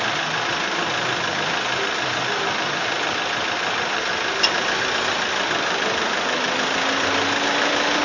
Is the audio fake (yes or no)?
no